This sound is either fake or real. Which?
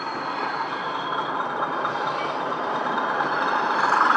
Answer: fake